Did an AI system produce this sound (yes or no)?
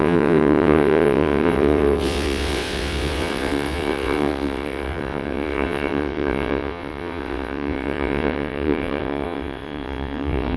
yes